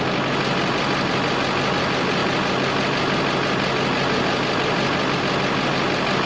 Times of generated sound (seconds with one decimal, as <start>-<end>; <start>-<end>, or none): none